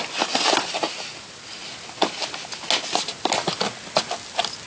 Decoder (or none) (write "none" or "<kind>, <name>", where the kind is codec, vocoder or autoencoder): none